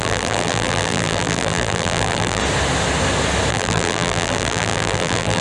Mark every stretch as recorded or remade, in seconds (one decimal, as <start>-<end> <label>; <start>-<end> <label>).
0.0-2.4 remade; 2.4-3.5 recorded; 3.5-5.4 remade